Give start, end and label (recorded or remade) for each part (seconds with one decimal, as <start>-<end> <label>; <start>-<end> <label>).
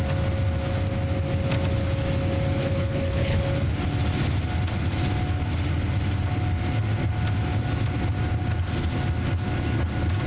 0.0-2.6 recorded; 2.6-3.4 remade; 3.4-10.3 recorded